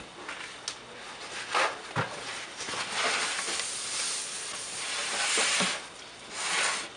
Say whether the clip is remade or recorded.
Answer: recorded